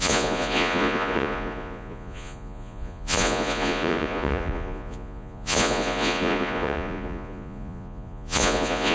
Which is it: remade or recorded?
remade